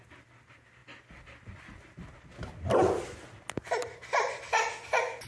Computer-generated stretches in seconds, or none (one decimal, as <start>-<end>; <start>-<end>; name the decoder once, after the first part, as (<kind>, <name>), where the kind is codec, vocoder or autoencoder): none